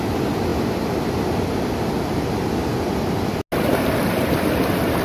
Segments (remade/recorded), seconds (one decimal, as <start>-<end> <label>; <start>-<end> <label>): 0.0-5.0 recorded